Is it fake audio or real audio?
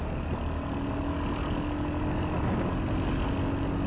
real